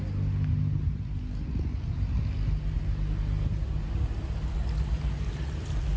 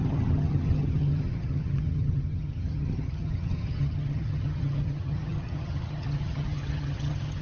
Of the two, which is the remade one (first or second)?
second